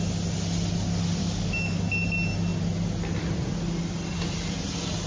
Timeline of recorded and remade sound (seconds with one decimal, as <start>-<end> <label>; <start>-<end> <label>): 0.0-1.2 recorded; 1.2-1.8 remade; 1.8-5.1 recorded